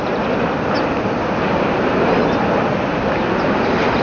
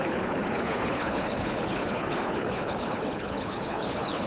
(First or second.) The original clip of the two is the first